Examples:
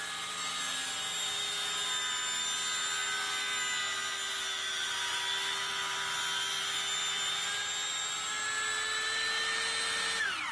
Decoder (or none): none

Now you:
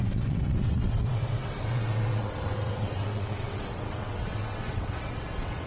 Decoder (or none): vocoder, WaveNeXt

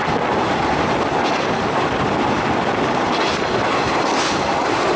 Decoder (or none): none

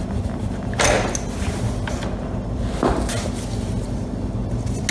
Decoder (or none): none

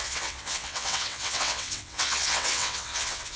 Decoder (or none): vocoder, WaveNeXt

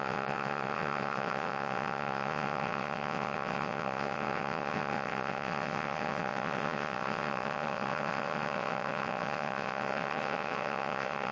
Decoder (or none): vocoder, WaveNeXt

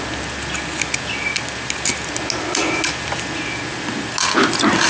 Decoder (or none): none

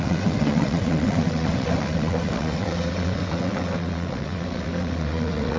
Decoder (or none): vocoder, WaveNeXt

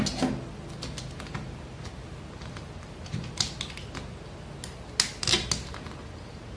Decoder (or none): none